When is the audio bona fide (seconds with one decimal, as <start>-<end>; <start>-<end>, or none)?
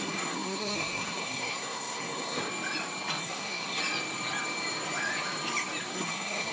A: 2.4-3.2; 3.8-5.9